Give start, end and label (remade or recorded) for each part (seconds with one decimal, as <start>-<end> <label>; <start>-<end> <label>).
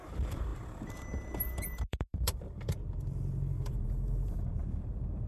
0.0-5.3 remade